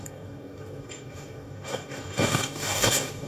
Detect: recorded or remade remade